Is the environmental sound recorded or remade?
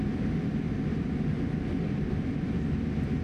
recorded